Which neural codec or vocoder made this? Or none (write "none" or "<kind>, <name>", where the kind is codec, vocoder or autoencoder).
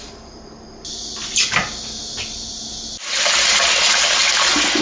none